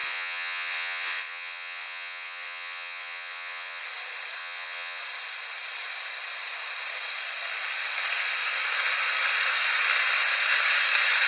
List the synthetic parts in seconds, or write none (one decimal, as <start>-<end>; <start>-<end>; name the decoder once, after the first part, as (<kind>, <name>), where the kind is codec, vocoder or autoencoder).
0.0-3.8 (vocoder, Vocos); 4.4-5.0